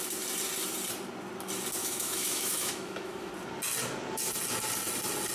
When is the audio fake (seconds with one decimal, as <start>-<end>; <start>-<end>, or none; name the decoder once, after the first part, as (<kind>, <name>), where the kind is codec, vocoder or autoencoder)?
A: 1.8-3.3 (autoencoder, DAC-VAE)